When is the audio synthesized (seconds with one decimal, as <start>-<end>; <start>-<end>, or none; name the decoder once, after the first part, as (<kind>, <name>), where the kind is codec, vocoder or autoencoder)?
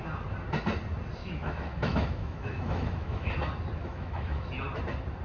1.2-3.3 (autoencoder, DAC-VAE); 3.8-4.5